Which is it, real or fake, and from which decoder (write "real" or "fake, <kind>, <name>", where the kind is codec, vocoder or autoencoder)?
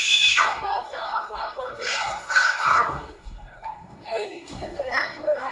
fake, codec, SNAC